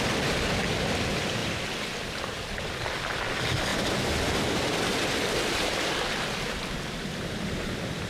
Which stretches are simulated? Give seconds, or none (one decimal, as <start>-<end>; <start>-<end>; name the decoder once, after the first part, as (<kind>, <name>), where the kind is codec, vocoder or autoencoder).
1.4-2.9 (vocoder, BigVGAN v2)